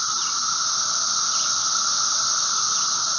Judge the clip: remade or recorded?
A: recorded